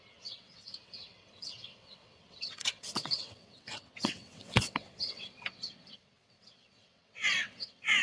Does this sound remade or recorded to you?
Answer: remade